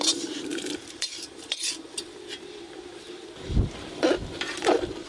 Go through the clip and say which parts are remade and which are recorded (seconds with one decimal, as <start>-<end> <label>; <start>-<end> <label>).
0.0-0.5 recorded; 0.5-3.6 remade; 3.6-4.2 recorded; 4.2-5.1 remade